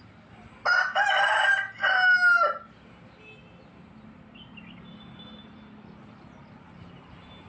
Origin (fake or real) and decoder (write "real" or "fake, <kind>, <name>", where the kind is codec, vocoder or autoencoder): real